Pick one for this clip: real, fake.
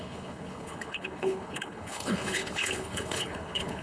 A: fake